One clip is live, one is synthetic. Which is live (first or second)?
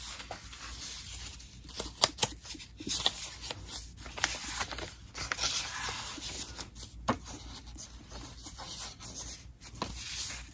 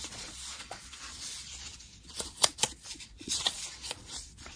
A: first